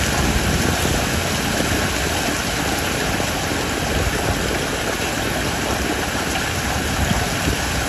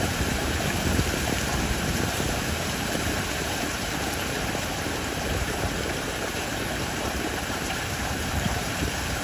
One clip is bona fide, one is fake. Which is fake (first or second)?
second